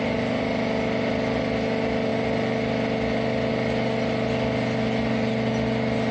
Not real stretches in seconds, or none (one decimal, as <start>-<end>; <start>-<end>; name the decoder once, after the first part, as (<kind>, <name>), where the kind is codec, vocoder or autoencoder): none